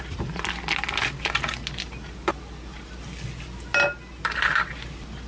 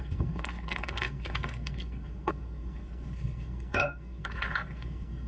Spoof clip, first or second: second